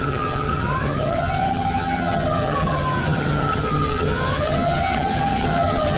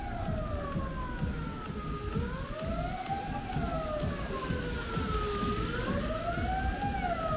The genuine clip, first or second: second